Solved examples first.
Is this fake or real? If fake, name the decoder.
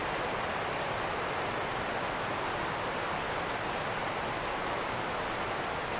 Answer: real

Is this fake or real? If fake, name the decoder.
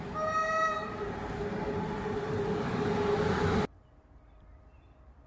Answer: real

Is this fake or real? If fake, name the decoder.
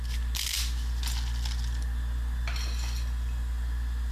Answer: real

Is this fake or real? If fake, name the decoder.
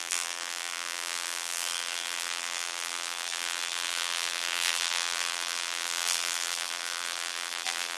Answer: fake, vocoder, BigVGAN v2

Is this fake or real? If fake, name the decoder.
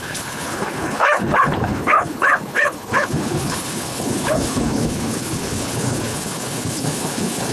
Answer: fake, codec, HILCodec